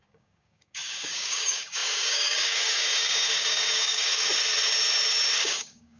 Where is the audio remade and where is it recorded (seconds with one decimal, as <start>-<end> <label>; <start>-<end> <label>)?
0.0-4.3 remade; 4.3-5.4 recorded; 5.4-6.0 remade